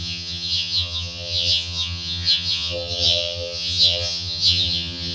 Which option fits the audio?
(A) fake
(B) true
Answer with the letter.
A